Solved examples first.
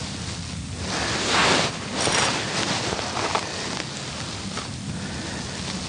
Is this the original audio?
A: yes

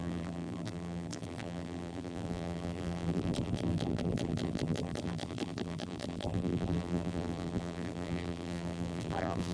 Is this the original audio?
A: no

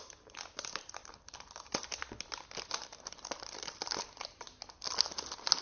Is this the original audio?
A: yes